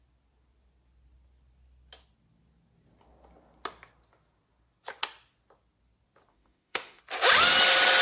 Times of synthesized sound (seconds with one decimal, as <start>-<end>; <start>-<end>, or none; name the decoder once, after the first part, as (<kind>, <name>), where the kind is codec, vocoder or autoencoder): 6.3-7.0 (autoencoder, DAC-VAE)